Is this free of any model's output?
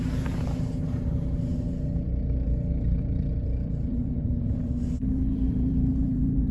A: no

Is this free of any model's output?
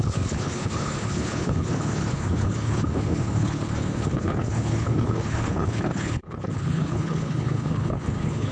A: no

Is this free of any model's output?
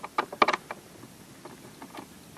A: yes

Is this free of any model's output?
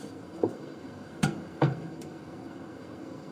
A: no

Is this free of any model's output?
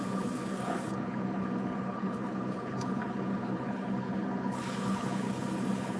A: no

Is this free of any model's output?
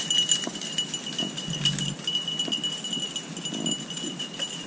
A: yes